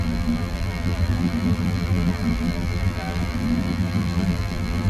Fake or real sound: fake